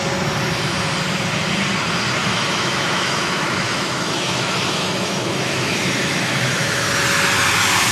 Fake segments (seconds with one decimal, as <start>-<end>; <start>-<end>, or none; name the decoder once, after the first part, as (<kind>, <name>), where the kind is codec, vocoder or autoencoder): 2.2-6.9 (autoencoder, DAC-VAE)